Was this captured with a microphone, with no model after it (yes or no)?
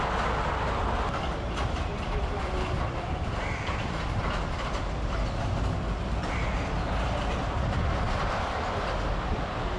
yes